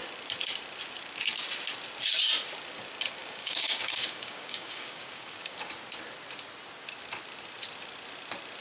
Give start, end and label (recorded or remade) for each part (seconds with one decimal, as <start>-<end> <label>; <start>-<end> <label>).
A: 0.0-3.2 recorded; 3.2-5.7 remade; 5.7-8.6 recorded